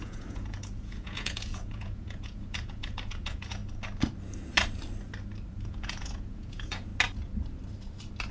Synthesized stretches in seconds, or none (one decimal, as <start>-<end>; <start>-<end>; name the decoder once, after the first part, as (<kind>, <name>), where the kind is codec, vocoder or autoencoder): 0.0-3.6 (vocoder, Vocos); 5.6-6.9